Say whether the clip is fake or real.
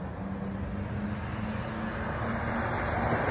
real